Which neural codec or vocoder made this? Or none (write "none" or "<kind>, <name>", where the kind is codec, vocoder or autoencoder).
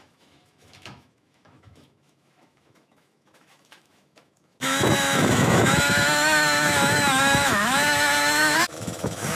autoencoder, DAC-VAE